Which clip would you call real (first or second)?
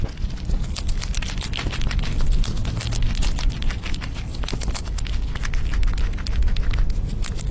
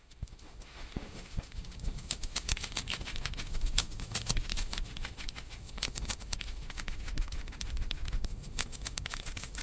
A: first